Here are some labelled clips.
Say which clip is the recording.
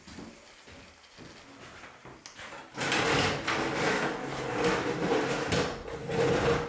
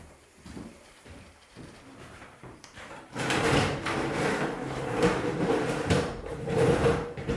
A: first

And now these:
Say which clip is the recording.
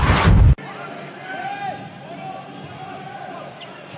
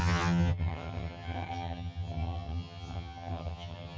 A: first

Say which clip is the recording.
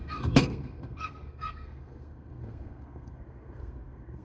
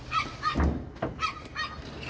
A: second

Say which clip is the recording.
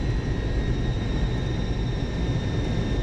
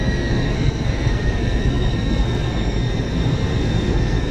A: first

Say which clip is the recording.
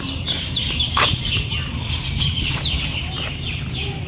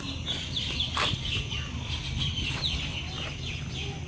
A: second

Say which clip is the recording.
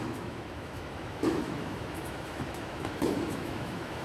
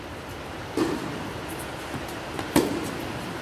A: second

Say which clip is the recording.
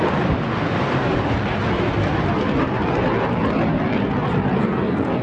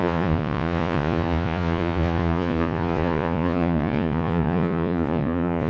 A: first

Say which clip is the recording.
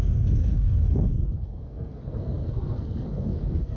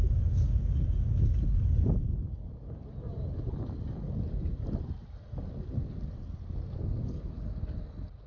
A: second